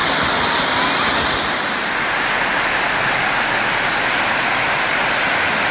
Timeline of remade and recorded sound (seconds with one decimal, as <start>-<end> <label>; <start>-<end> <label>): 0.0-5.7 recorded